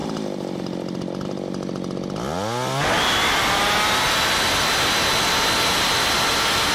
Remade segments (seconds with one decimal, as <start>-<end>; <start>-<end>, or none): none